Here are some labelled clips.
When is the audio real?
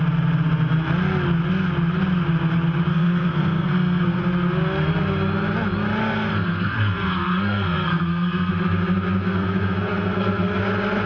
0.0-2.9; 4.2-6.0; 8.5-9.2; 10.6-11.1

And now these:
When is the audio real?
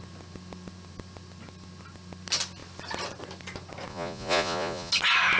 0.0-3.9; 4.9-5.4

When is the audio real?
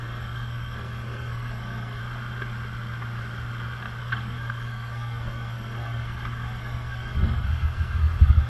2.0-4.0